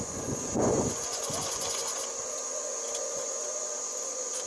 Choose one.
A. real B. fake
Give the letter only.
B